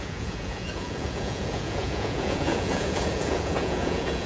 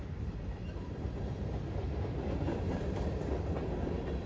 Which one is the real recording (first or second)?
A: second